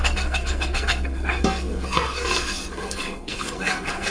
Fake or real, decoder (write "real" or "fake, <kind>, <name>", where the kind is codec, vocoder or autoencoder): fake, codec, SNAC